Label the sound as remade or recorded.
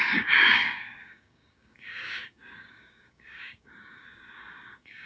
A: remade